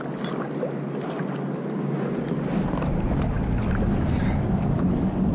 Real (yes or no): yes